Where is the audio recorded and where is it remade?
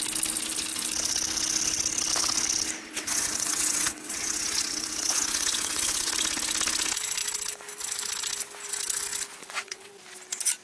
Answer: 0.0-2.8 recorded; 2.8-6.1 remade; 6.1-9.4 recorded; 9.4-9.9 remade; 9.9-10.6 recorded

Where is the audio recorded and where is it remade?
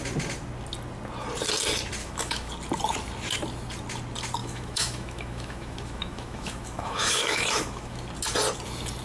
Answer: 0.0-2.0 recorded; 2.0-2.5 remade; 2.5-4.4 recorded; 4.4-8.0 remade; 8.0-9.0 recorded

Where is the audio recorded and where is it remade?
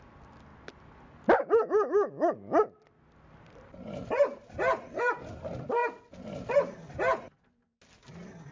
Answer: 0.0-8.5 recorded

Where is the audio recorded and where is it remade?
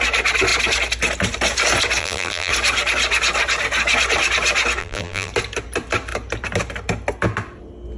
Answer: 0.0-2.0 recorded; 2.0-2.5 remade; 2.5-4.8 recorded; 4.8-5.3 remade; 5.3-8.0 recorded